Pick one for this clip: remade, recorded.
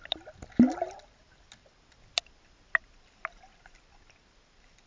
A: recorded